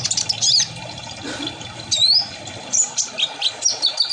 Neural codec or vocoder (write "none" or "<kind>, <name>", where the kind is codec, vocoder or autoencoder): none